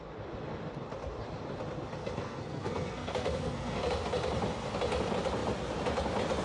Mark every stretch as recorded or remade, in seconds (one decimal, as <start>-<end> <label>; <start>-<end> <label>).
0.0-2.0 recorded; 2.0-3.9 remade; 3.9-6.4 recorded

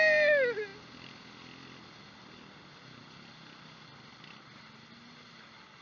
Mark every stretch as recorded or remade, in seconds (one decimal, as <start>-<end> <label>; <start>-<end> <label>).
0.0-5.8 recorded